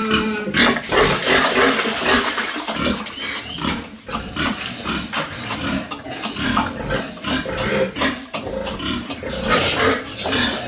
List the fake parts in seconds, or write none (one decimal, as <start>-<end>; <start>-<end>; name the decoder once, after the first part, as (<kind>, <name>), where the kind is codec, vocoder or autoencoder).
none